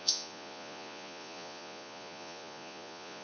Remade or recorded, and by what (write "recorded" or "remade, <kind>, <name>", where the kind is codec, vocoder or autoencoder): remade, vocoder, Vocos